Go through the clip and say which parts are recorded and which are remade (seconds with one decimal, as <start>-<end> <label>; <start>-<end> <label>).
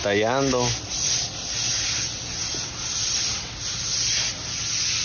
0.0-0.8 recorded; 0.8-1.7 remade; 1.7-5.0 recorded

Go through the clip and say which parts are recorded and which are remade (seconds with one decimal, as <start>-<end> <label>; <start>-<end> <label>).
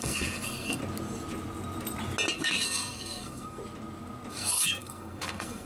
0.0-0.8 remade; 0.8-2.3 recorded; 2.3-3.6 remade; 3.6-4.3 recorded; 4.3-5.7 remade